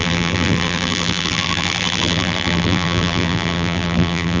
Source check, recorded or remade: remade